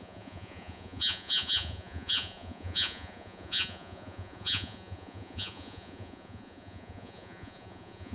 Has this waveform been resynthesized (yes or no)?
yes